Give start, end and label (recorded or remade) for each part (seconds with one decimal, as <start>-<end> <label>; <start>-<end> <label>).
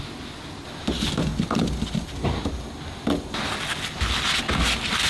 0.0-5.1 recorded